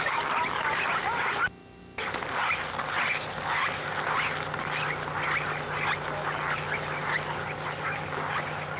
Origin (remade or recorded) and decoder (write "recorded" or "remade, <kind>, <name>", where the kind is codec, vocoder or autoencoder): recorded